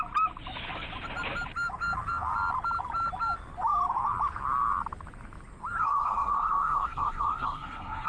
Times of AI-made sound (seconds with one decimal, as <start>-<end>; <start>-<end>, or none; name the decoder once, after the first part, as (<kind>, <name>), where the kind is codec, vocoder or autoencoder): 5.8-8.1 (codec, SNAC)